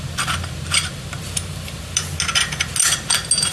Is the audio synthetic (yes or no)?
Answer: no